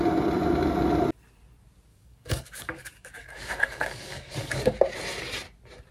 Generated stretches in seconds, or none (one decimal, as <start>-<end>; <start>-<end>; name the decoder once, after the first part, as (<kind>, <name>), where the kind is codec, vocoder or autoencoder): 1.9-4.8 (codec, DAC)